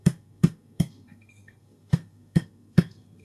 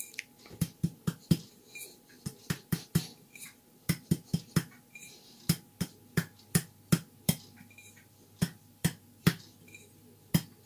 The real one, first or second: second